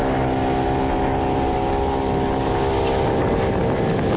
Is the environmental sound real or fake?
real